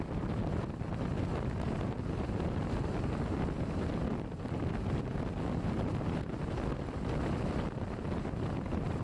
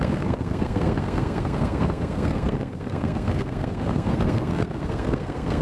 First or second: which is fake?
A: second